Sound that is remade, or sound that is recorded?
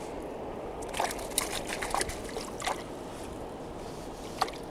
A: recorded